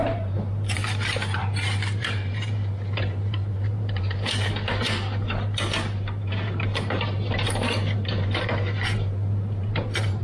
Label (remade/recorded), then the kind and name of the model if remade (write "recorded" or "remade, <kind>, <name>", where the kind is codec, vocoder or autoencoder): remade, vocoder, BigVGAN v2